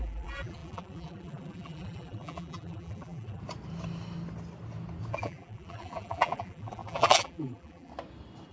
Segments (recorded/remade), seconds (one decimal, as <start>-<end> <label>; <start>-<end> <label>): 0.0-3.4 remade; 3.4-5.1 recorded; 5.1-7.9 remade; 7.9-8.5 recorded